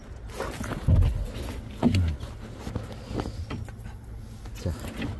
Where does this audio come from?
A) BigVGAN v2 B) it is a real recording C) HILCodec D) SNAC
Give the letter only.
B